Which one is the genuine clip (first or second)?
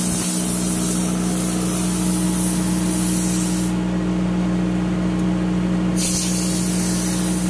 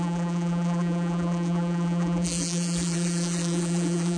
first